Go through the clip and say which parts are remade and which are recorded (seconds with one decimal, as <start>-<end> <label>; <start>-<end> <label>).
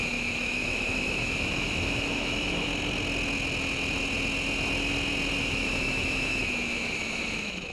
0.0-2.7 remade; 2.7-5.4 recorded; 5.4-7.7 remade